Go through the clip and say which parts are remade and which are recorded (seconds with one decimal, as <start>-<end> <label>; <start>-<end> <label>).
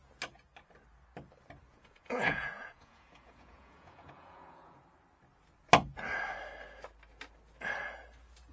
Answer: 0.0-1.7 recorded; 1.7-4.8 remade; 4.8-8.5 recorded